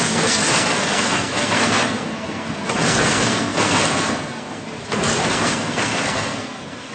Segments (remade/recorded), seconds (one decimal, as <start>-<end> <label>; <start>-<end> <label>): 0.0-6.9 remade

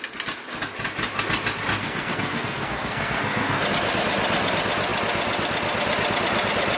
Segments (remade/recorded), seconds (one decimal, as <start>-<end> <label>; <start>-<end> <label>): 0.0-1.8 recorded; 1.8-3.6 remade; 3.6-6.8 recorded

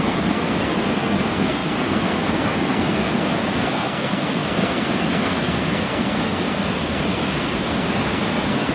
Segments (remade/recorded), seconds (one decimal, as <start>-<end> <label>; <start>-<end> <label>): 0.0-8.7 remade

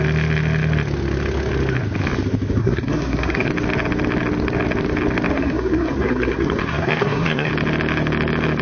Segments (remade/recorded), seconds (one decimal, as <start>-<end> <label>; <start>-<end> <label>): 0.0-2.6 recorded; 2.6-3.5 remade; 3.5-5.3 recorded; 5.3-7.5 remade; 7.5-8.6 recorded

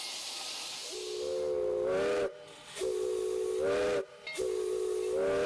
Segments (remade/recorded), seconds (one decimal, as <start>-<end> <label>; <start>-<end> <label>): 0.0-5.5 recorded

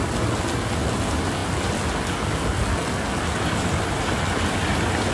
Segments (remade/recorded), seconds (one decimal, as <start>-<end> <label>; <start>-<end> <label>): 0.0-5.1 recorded

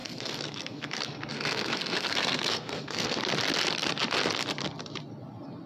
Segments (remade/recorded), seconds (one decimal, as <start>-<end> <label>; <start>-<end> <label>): 0.0-3.2 remade; 3.2-5.7 recorded

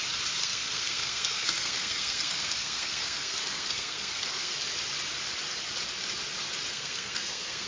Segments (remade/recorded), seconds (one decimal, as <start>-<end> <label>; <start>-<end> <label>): 0.0-0.4 recorded; 0.4-4.5 remade; 4.5-6.7 recorded; 6.7-7.7 remade